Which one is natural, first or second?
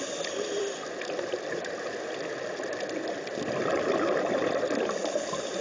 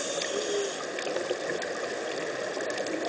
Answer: second